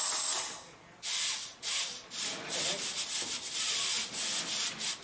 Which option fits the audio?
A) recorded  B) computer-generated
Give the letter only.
A